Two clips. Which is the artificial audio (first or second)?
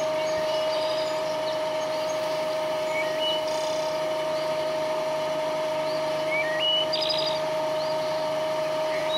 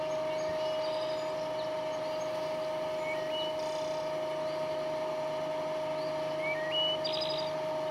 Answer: first